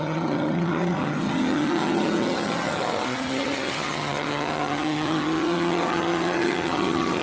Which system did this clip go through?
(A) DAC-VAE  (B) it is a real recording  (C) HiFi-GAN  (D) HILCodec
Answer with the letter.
C